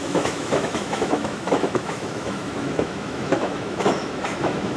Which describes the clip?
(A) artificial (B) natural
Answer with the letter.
A